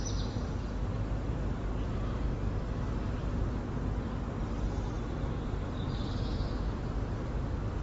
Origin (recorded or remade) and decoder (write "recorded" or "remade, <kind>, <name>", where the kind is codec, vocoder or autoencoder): recorded